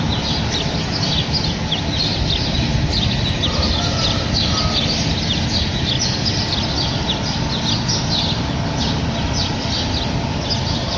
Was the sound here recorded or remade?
recorded